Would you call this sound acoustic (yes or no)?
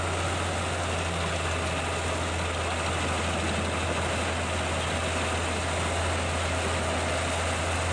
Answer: yes